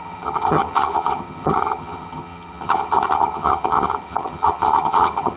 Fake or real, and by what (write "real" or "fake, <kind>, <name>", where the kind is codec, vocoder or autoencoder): fake, vocoder, HiFi-GAN